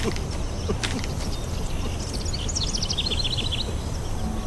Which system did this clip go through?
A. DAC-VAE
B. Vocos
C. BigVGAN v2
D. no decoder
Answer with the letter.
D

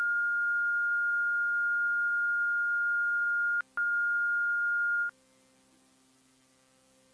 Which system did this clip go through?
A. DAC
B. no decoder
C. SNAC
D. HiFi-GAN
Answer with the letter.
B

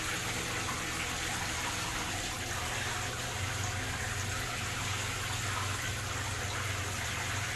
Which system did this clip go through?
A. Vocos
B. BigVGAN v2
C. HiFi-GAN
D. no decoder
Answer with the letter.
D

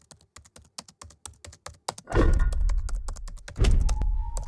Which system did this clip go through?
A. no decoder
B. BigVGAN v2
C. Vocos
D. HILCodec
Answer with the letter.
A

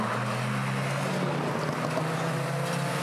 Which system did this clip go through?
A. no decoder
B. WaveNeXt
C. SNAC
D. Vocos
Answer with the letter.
A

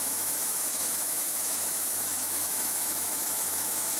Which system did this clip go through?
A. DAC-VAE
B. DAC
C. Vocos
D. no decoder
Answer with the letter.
A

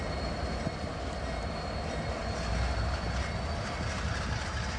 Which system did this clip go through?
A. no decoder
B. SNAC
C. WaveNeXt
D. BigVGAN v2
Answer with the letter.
A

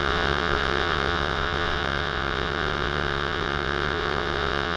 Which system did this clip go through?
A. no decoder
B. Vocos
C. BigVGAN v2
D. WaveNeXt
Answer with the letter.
D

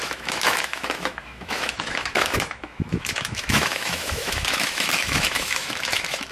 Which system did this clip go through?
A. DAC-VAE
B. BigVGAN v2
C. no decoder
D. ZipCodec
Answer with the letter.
A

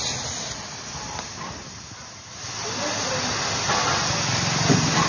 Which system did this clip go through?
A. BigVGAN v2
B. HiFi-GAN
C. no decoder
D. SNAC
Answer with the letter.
C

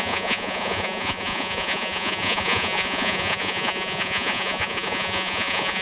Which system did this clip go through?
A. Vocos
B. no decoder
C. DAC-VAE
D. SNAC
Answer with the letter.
A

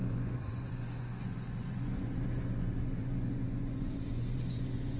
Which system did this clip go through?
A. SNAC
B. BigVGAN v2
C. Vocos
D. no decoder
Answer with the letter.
C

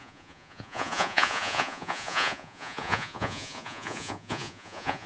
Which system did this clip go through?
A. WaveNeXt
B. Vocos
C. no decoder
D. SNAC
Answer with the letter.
B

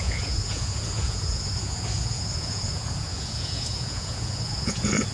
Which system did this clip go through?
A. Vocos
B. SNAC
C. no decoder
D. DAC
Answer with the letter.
A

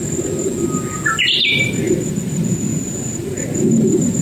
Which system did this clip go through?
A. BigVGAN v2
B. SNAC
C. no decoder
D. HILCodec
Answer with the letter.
C